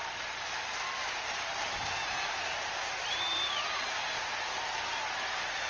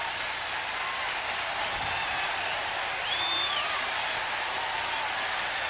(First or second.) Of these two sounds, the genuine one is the first